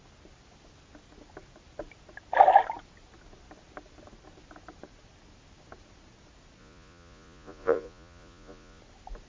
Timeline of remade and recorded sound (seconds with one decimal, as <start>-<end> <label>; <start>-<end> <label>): 0.0-6.6 recorded; 6.6-8.8 remade; 8.8-9.3 recorded